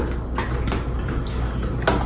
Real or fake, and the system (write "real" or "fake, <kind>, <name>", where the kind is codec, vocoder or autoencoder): real